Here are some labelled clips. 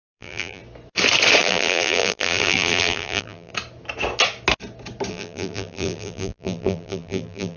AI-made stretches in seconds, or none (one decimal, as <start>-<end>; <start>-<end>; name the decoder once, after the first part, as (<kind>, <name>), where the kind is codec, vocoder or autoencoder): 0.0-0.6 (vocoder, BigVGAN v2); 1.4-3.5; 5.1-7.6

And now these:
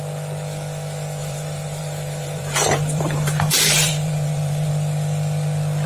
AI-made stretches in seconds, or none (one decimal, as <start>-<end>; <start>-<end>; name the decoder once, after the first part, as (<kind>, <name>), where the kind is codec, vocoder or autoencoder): 1.2-4.7 (vocoder, BigVGAN v2)

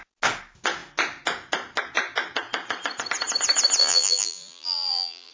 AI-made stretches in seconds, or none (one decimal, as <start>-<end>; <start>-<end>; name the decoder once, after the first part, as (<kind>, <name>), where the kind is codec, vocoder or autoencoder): 3.8-5.3 (vocoder, BigVGAN v2)

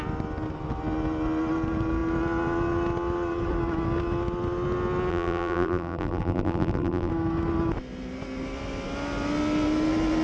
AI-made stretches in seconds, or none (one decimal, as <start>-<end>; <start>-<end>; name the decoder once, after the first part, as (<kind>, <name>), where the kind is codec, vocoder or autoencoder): 5.1-7.1 (vocoder, BigVGAN v2)

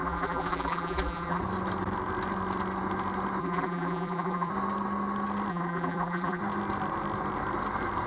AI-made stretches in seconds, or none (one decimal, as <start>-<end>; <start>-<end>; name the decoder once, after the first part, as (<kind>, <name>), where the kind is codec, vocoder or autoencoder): 0.0-1.4 (vocoder, BigVGAN v2); 3.4-4.5; 5.5-6.4

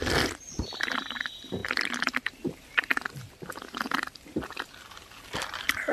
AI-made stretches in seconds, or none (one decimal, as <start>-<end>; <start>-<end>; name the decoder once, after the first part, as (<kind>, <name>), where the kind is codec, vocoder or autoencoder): 0.0-5.9 (vocoder, BigVGAN v2)